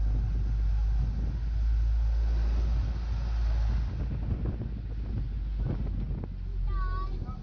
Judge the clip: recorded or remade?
recorded